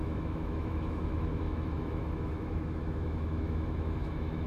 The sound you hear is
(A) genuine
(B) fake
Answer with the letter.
B